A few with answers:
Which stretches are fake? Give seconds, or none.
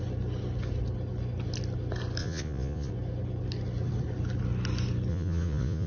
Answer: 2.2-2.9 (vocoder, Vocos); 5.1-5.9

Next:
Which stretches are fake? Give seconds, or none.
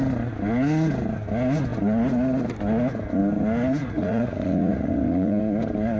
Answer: 3.8-5.4 (vocoder, Vocos)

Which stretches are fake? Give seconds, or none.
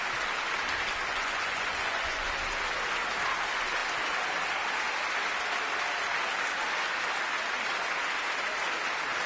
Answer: 1.1-2.3 (vocoder, Vocos)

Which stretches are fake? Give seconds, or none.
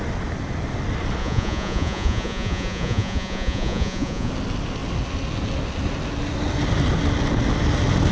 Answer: 1.2-4.3 (vocoder, Vocos)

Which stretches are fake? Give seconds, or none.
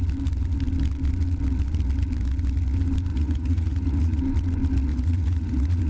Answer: 3.1-4.2 (vocoder, Vocos); 4.9-5.9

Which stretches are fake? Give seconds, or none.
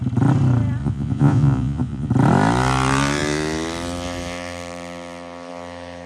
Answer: 0.8-2.1 (vocoder, Vocos)